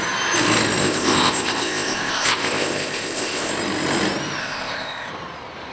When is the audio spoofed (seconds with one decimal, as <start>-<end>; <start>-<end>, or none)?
0.8-3.5; 4.4-5.1